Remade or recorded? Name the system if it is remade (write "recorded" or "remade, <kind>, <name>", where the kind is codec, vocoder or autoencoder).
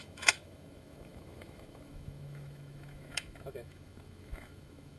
remade, autoencoder, DAC-VAE